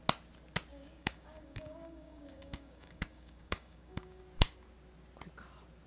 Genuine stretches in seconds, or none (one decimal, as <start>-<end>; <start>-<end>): 0.0-0.7; 4.2-5.9